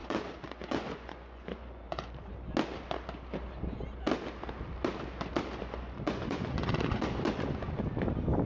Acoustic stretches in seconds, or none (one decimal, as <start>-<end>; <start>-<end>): 2.3-5.6; 7.8-8.5